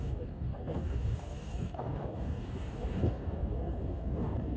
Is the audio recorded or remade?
remade